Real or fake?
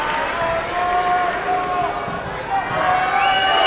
real